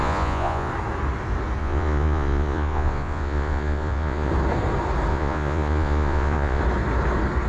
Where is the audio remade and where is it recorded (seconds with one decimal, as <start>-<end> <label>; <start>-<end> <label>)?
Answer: 0.0-0.7 remade; 0.7-1.6 recorded; 1.6-4.3 remade; 4.3-5.1 recorded; 5.1-6.6 remade; 6.6-7.5 recorded